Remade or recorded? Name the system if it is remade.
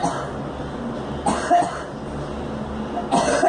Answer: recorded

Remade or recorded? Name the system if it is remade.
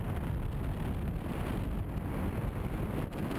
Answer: recorded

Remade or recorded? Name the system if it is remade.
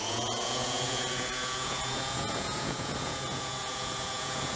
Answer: remade, vocoder, Vocos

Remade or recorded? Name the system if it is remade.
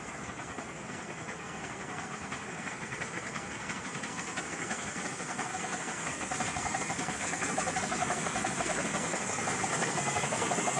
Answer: remade, codec, SNAC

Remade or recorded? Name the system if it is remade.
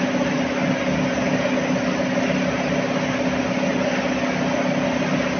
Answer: recorded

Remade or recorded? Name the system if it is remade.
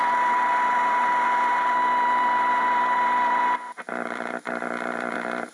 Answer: remade, vocoder, BigVGAN v2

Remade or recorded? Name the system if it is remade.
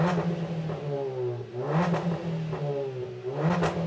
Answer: recorded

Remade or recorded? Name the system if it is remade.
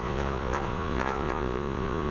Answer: remade, vocoder, Vocos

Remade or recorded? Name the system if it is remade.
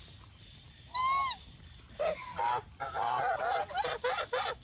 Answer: recorded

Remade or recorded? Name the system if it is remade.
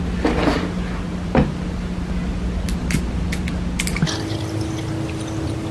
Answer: remade, vocoder, BigVGAN v2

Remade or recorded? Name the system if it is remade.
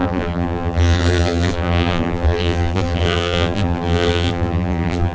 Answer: remade, vocoder, BigVGAN v2